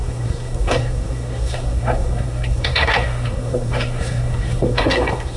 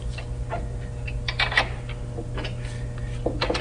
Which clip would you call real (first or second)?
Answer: second